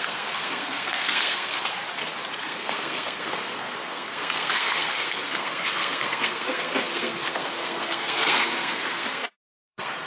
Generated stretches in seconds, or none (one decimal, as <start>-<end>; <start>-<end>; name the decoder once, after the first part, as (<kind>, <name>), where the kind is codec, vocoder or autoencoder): 0.0-1.8 (codec, SNAC); 2.4-10.1